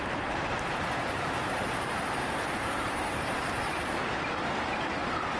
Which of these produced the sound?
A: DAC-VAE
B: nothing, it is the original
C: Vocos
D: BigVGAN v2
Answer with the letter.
D